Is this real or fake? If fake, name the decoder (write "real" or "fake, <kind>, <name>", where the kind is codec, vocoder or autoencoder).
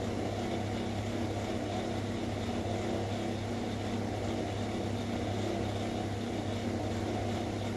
real